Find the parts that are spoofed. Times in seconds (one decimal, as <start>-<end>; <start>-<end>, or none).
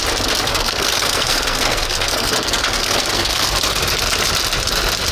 0.5-3.5